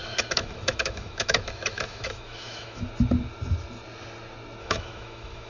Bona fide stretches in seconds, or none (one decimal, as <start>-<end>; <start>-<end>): 2.9-4.6